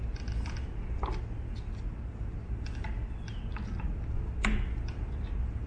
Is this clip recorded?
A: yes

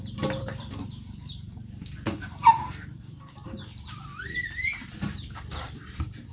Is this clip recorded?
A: no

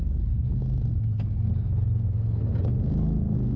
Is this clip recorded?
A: yes